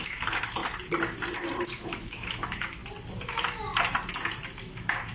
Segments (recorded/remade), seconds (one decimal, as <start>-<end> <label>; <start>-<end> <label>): 0.0-0.6 remade; 0.6-1.6 recorded; 1.6-2.8 remade; 2.8-3.3 recorded; 3.3-3.7 remade; 3.7-4.6 recorded; 4.6-5.1 remade